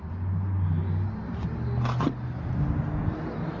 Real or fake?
real